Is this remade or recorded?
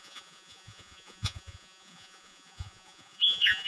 remade